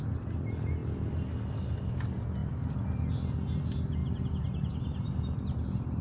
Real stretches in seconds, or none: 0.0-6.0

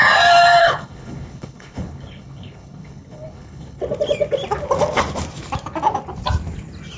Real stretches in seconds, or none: 0.0-0.6; 3.8-7.0

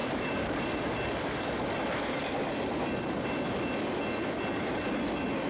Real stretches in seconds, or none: 0.9-5.5

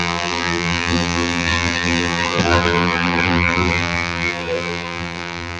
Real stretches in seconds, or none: none

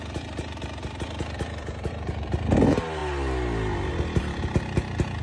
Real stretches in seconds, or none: 0.0-5.2

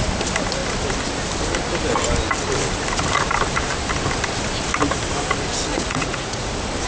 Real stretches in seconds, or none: 0.0-5.7; 6.5-6.9

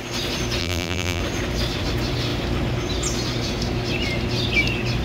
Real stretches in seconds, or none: 0.0-0.6; 1.2-5.0